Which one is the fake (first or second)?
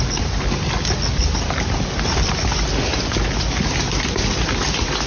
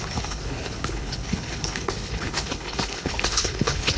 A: second